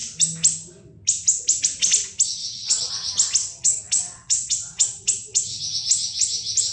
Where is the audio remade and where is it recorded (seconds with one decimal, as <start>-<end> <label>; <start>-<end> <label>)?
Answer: 0.0-2.4 recorded; 2.4-2.9 remade; 2.9-3.4 recorded; 3.4-5.6 remade; 5.6-6.7 recorded